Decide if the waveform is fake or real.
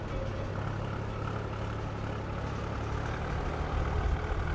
real